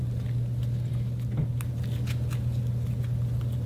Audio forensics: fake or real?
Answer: real